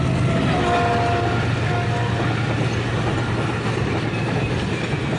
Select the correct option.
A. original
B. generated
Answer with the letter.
A